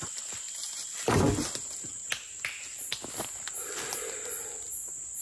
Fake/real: real